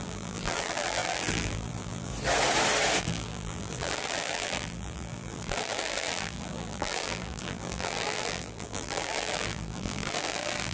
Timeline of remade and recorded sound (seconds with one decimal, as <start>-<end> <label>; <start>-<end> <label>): 0.0-2.1 remade; 2.1-3.0 recorded; 3.0-10.7 remade